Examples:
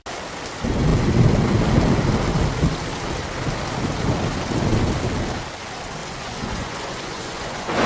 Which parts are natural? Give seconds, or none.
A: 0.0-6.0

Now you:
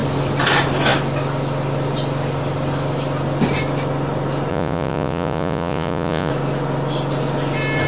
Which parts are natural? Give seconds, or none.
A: 0.0-4.5; 6.3-7.9

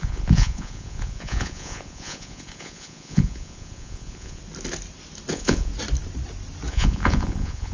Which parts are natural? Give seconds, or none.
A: 4.4-5.3; 5.7-6.7

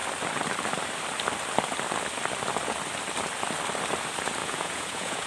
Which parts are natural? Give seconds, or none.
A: 0.0-4.4

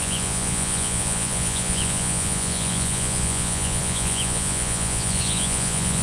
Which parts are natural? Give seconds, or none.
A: none

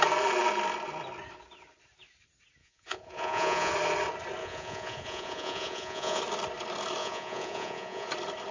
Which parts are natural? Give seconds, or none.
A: 0.0-2.6; 3.7-4.4; 6.2-7.0; 8.1-8.5

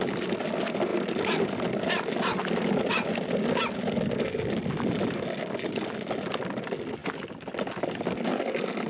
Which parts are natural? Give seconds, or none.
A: 0.0-8.9